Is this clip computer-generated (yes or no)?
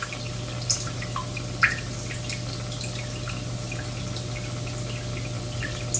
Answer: no